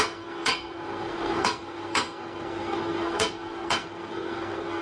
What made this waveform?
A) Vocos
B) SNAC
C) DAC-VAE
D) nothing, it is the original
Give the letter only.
B